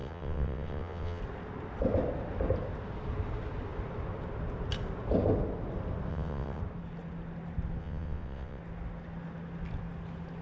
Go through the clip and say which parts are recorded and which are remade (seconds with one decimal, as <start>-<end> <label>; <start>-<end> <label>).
0.0-1.2 remade; 1.2-6.1 recorded; 6.1-6.6 remade; 6.6-7.8 recorded; 7.8-8.6 remade; 8.6-10.4 recorded